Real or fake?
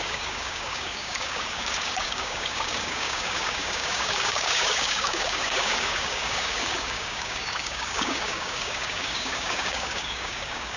fake